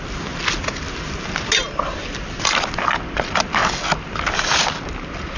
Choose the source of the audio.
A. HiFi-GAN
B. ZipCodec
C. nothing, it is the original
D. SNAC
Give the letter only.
C